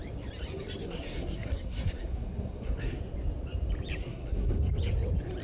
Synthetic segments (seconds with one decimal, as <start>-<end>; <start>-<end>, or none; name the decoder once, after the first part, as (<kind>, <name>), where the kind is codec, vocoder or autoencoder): 0.8-3.0 (codec, SNAC); 4.0-4.7